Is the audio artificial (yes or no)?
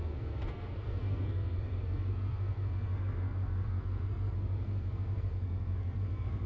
yes